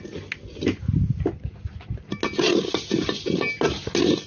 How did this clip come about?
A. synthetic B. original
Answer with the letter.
B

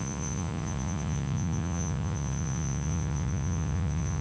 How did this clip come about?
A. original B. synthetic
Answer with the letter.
B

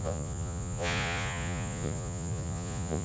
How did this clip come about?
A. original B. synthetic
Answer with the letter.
B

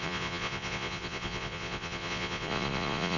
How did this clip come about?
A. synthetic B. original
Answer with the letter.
A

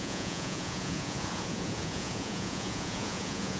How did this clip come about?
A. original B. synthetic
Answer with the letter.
B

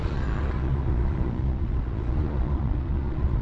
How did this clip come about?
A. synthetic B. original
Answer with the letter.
A